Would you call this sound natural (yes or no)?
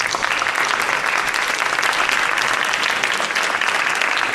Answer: yes